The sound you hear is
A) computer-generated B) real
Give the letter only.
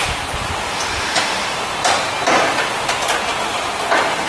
B